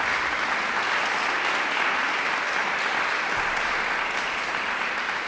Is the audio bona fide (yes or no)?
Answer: yes